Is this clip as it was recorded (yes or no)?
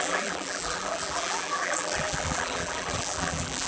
no